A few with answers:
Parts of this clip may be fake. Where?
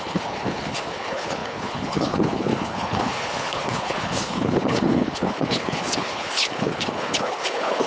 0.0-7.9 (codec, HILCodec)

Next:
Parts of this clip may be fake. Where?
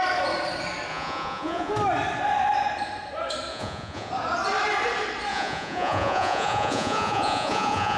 0.9-1.7 (vocoder, Vocos); 3.5-4.1; 5.3-8.0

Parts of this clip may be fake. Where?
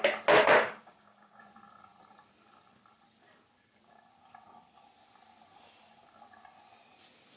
0.6-1.4 (codec, DAC)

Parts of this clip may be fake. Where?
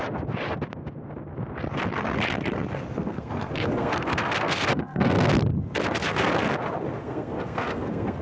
2.9-5.3 (codec, SNAC); 7.0-8.2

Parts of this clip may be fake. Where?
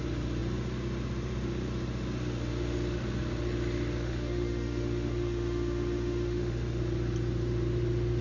4.0-6.8 (autoencoder, DAC-VAE)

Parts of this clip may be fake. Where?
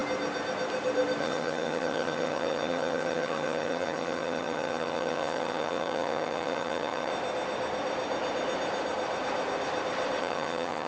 1.2-7.1 (vocoder, HiFi-GAN); 10.2-10.9